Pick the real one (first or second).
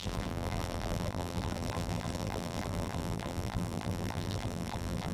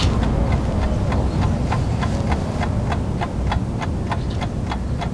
second